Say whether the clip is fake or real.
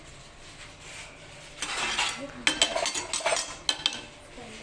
real